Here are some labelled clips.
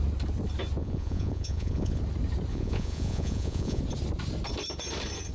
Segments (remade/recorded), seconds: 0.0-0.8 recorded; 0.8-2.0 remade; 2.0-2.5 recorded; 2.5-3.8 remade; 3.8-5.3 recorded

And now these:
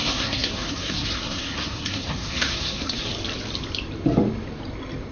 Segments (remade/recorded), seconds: 0.0-3.1 remade; 3.1-5.1 recorded

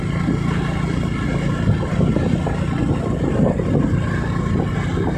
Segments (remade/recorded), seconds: 0.0-5.2 recorded

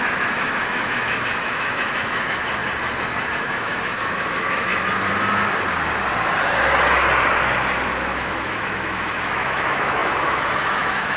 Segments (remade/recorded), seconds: 0.0-2.6 remade; 2.6-3.2 recorded; 3.2-4.7 remade; 4.7-8.0 recorded; 8.0-11.2 remade

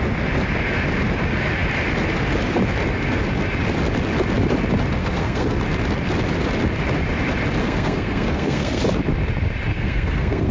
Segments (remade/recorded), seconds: 0.0-5.0 recorded; 5.0-5.6 remade; 5.6-7.6 recorded; 7.6-8.8 remade; 8.8-9.7 recorded; 9.7-10.5 remade